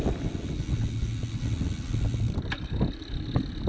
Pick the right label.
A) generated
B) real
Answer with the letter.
B